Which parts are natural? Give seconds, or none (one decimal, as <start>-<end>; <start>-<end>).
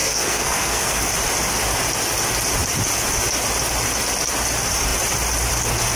1.0-6.0